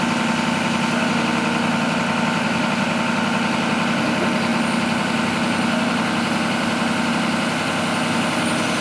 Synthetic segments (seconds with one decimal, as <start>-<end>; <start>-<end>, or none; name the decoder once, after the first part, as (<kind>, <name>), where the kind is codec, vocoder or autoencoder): none

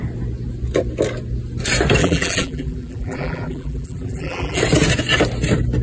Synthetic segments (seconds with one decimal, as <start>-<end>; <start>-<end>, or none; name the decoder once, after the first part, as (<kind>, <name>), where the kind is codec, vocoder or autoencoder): 2.0-4.6 (vocoder, BigVGAN v2)

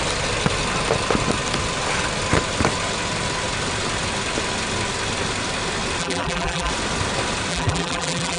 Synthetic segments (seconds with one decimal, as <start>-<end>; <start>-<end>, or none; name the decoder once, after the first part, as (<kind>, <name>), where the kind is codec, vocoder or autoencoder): 6.0-6.7 (vocoder, BigVGAN v2); 7.5-8.4